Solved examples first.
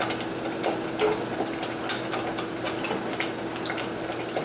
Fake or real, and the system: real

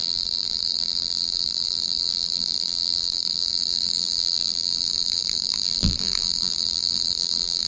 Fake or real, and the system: fake, vocoder, BigVGAN v2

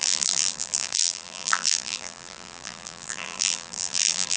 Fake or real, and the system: fake, vocoder, BigVGAN v2